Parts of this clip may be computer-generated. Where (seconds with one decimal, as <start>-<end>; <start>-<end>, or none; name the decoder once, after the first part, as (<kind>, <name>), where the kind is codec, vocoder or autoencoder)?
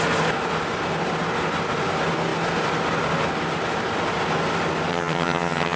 4.9-5.8 (vocoder, HiFi-GAN)